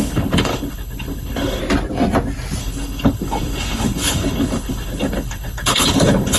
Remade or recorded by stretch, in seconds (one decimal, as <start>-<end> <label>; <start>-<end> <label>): 0.0-1.6 remade; 1.6-2.6 recorded; 2.6-6.4 remade